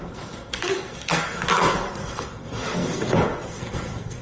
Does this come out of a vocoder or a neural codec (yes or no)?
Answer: yes